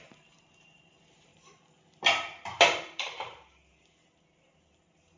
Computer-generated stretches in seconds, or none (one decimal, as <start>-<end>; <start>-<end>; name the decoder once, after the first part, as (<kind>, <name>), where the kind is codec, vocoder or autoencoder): 0.0-1.3 (vocoder, BigVGAN v2); 2.8-5.2